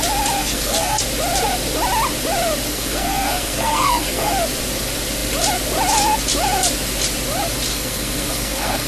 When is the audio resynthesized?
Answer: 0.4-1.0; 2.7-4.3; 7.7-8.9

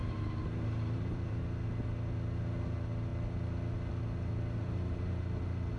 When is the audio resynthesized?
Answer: 0.0-1.4; 4.6-5.2

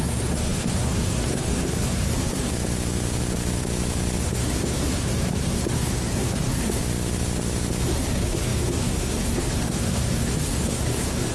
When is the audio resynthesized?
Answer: 0.0-2.5; 4.2-6.8; 7.8-11.3

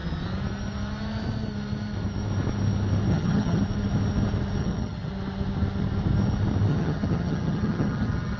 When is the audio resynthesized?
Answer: 3.1-3.6; 4.6-5.1; 6.7-8.4